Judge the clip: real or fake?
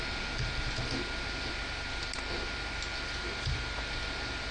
real